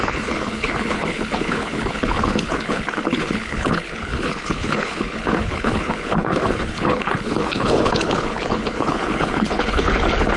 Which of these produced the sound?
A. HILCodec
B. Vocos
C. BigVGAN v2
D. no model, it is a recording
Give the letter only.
A